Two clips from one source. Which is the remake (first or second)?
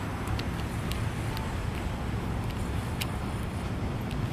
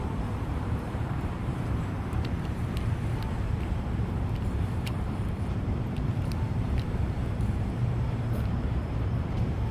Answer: second